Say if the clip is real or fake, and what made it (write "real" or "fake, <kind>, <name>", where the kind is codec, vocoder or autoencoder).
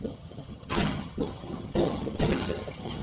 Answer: fake, vocoder, HiFi-GAN